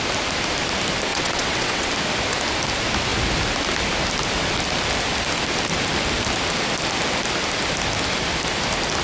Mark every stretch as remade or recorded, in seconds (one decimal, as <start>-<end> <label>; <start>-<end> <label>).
0.0-1.1 recorded; 1.1-1.9 remade; 1.9-9.0 recorded